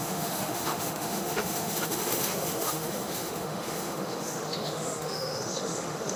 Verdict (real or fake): fake